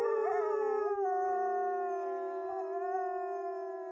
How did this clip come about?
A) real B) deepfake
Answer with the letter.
A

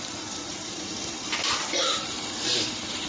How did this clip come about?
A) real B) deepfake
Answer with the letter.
B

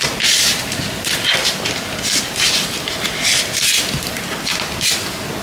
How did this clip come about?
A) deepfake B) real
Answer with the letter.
B